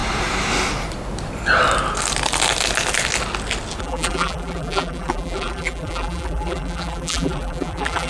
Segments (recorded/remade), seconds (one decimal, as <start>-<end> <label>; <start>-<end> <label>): 0.0-3.8 recorded; 3.8-8.1 remade